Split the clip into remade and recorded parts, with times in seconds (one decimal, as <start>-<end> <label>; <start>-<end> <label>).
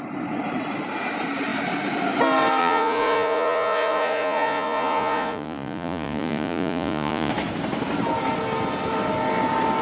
0.0-2.6 recorded; 2.6-7.3 remade; 7.3-9.8 recorded